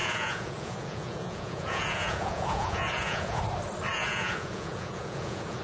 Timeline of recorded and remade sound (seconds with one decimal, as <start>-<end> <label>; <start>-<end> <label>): 0.0-3.4 remade; 3.4-3.9 recorded; 3.9-5.6 remade